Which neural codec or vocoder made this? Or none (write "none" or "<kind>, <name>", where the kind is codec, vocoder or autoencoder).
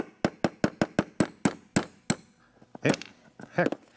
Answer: none